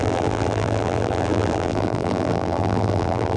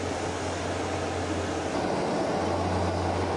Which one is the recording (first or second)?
second